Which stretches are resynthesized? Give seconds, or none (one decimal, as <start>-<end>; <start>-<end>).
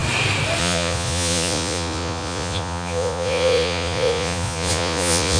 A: 0.6-5.4